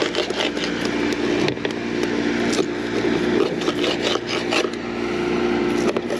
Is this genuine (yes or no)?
yes